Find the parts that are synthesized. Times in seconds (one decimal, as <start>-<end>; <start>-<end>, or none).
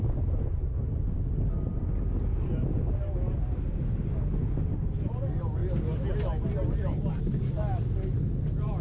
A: none